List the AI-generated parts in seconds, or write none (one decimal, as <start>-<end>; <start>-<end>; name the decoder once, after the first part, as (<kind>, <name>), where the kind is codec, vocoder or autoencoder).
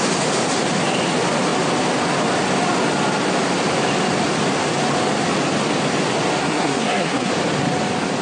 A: 6.4-7.3 (codec, SNAC)